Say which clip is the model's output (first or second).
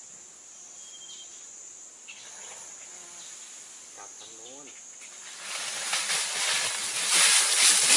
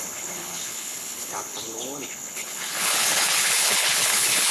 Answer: second